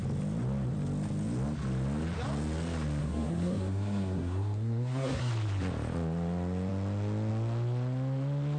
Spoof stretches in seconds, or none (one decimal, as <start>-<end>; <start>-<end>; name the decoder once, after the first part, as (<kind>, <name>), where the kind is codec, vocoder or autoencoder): 3.0-5.3 (codec, SNAC)